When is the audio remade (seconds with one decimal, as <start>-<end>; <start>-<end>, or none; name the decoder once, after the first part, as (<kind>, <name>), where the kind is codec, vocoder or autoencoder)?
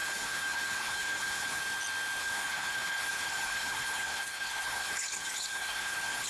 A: 0.0-1.6 (codec, HILCodec); 2.2-6.3